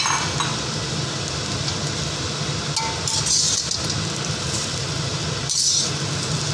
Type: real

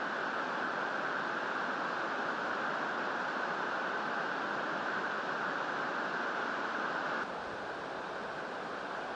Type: real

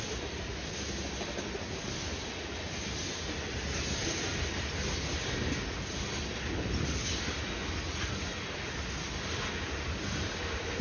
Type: real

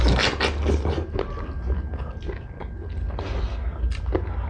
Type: real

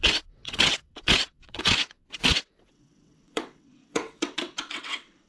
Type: fake